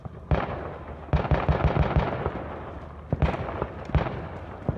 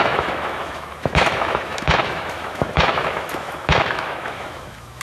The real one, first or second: first